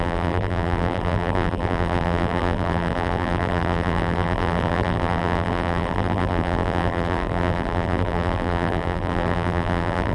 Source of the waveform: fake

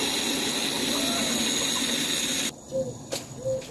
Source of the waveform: real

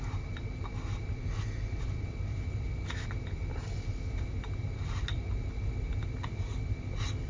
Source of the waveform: real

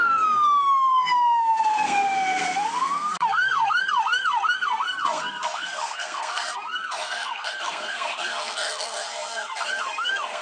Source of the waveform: fake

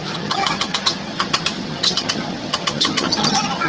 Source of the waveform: fake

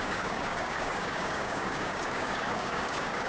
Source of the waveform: fake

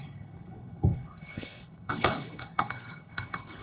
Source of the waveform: fake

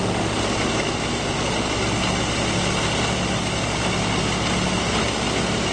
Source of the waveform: real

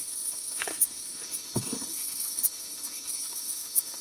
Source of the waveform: fake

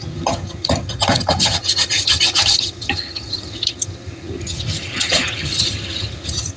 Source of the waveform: fake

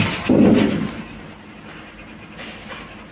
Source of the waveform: real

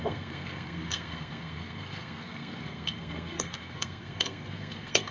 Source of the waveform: fake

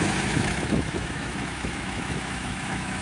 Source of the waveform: fake